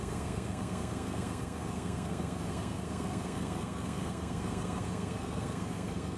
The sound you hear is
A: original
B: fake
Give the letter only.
B